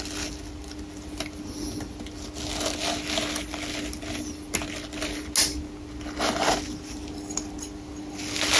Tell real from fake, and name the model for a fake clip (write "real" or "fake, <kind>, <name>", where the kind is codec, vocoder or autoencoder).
real